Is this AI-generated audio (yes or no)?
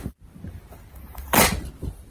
no